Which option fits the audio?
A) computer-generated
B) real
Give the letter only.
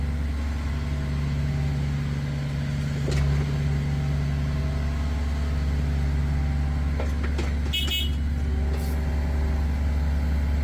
B